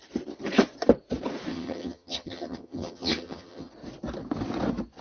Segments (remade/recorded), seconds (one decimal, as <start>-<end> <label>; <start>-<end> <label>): 0.0-1.5 recorded; 1.5-3.7 remade; 3.7-5.0 recorded